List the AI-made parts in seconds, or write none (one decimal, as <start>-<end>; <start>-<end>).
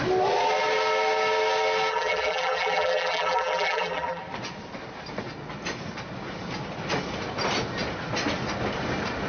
1.9-4.2